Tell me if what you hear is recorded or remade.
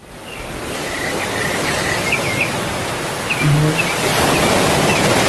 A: recorded